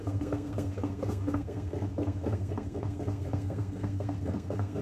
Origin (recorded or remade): remade